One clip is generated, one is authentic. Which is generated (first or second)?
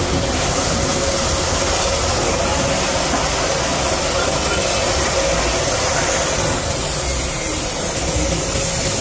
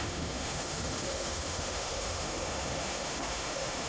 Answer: second